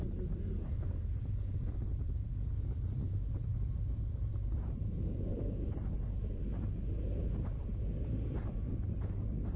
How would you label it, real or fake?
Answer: fake